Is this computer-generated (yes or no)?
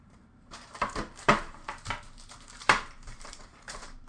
yes